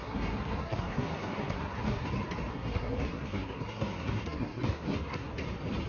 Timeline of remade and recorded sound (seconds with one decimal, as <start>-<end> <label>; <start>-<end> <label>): 0.0-2.1 remade; 2.1-2.5 recorded; 2.5-5.3 remade; 5.3-5.9 recorded

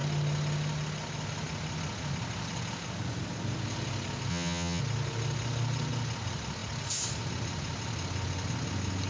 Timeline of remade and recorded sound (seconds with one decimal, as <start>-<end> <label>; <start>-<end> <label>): 0.0-4.3 recorded; 4.3-4.8 remade; 4.8-9.1 recorded